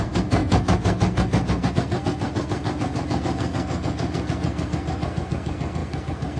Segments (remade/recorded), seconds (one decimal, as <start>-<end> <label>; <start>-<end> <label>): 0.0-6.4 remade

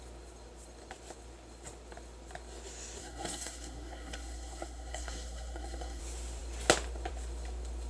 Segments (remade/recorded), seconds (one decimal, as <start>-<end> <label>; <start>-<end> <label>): 0.0-3.0 recorded; 3.0-6.0 remade; 6.0-7.9 recorded

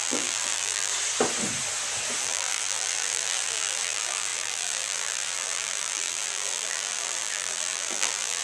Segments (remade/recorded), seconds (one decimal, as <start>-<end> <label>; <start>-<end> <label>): 0.0-0.9 remade; 0.9-2.2 recorded; 2.2-8.4 remade

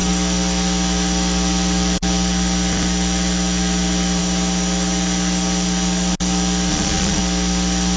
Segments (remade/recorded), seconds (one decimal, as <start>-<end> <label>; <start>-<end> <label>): 0.0-6.7 recorded; 6.7-7.2 remade; 7.2-8.0 recorded